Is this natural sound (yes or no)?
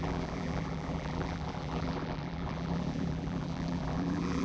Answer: no